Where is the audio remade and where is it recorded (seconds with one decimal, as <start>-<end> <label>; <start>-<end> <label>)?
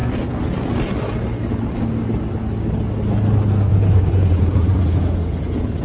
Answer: 0.0-3.7 recorded; 3.7-5.8 remade